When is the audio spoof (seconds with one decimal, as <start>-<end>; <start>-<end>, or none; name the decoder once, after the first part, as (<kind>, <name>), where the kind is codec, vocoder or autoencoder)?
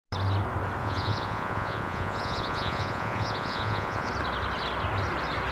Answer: 0.8-4.1 (vocoder, Vocos)